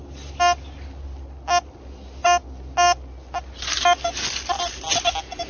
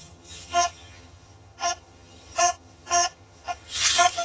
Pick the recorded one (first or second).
first